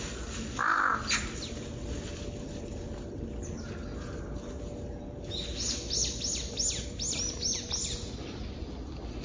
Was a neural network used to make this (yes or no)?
no